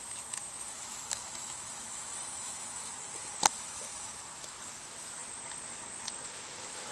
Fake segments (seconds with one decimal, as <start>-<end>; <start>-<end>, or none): 0.0-2.9; 3.5-5.2; 6.3-6.9